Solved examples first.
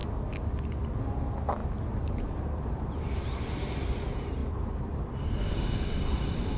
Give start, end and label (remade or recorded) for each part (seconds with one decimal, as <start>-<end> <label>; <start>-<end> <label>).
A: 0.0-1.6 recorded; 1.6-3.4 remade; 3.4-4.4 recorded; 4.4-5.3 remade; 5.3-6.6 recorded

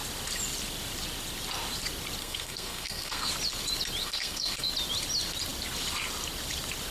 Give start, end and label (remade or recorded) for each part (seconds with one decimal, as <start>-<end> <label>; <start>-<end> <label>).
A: 0.0-2.2 recorded; 2.2-3.3 remade; 3.3-4.0 recorded; 4.0-4.7 remade; 4.7-6.9 recorded

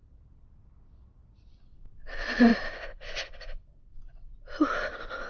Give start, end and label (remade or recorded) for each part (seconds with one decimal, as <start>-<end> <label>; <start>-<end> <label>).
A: 0.0-5.3 recorded